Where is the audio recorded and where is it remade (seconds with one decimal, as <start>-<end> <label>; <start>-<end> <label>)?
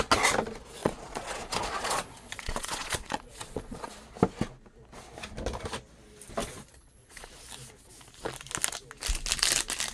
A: 0.0-0.8 recorded; 0.8-3.9 remade; 3.9-6.4 recorded; 6.4-7.3 remade; 7.3-9.9 recorded